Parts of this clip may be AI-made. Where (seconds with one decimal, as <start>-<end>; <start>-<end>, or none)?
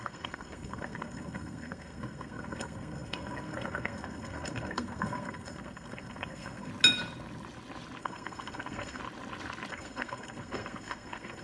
0.0-6.7; 8.0-9.0; 9.7-11.4